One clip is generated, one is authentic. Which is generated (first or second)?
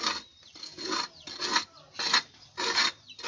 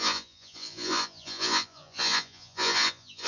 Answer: second